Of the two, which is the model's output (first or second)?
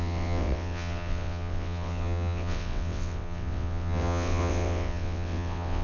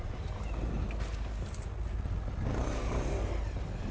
first